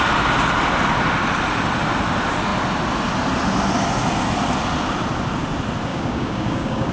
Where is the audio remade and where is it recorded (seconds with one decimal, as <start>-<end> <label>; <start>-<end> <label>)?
0.0-5.9 recorded; 5.9-6.9 remade